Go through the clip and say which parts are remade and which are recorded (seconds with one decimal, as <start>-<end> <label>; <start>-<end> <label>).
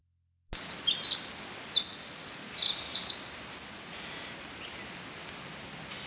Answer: 0.0-6.1 recorded